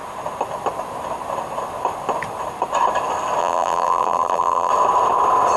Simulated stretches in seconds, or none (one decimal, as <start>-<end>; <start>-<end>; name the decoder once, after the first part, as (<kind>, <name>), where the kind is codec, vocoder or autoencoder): 3.4-4.7 (vocoder, BigVGAN v2)